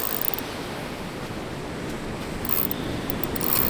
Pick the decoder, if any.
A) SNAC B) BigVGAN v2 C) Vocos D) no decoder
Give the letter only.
D